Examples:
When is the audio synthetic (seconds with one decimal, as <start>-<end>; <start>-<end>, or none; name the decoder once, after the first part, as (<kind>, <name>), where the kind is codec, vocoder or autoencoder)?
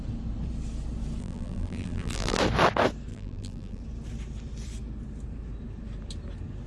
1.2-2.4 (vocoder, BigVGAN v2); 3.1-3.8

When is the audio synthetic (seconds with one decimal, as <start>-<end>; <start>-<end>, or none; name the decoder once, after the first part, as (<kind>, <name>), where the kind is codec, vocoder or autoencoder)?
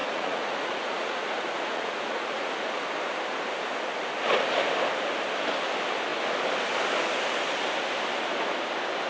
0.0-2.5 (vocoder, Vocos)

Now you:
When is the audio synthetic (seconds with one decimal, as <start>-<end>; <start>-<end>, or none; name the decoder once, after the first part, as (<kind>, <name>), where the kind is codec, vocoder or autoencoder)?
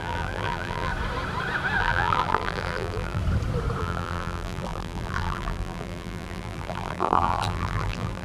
0.0-0.9 (vocoder, BigVGAN v2); 1.8-3.2; 3.8-8.2